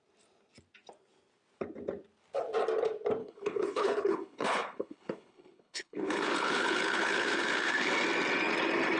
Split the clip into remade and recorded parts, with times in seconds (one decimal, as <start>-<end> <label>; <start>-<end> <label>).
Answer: 0.0-3.2 recorded; 3.2-7.9 remade; 7.9-9.0 recorded